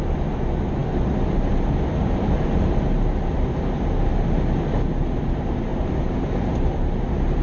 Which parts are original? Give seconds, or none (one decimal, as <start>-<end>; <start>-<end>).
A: 0.0-5.7; 7.0-7.4